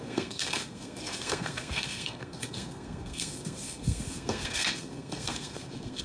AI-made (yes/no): yes